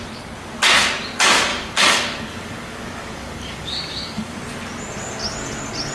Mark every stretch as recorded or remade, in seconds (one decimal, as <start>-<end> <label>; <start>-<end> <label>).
0.0-1.5 recorded; 1.5-4.4 remade; 4.4-5.9 recorded